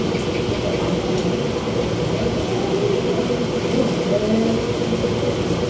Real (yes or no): yes